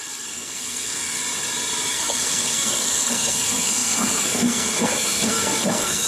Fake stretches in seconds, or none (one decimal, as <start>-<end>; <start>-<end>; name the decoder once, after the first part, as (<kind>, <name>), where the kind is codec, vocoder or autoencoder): 0.0-1.2 (codec, SNAC); 1.9-6.1